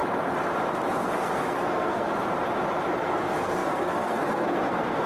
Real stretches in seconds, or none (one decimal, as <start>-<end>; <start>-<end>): 0.0-1.0; 2.1-3.0